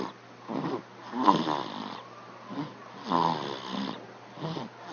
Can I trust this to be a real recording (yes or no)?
yes